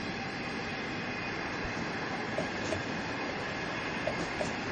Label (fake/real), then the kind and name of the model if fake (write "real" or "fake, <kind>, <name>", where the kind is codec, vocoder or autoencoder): real